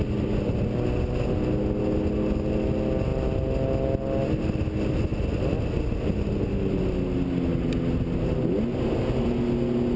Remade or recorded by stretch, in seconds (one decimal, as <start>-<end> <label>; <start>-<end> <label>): 0.0-10.0 recorded